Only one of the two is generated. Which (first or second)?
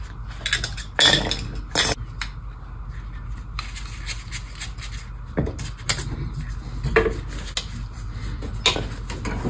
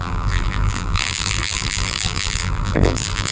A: second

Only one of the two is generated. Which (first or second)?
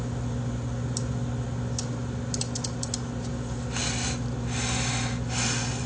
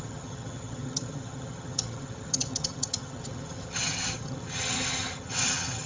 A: second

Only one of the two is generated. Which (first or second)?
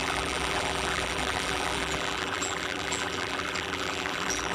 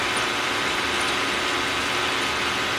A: first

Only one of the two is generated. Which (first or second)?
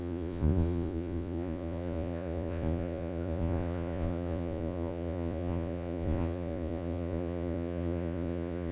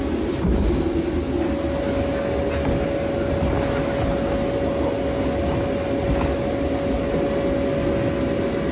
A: first